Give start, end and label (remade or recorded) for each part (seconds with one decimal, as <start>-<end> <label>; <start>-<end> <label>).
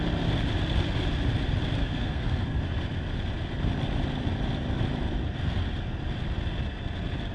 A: 0.0-1.8 recorded; 1.8-2.6 remade; 2.6-7.3 recorded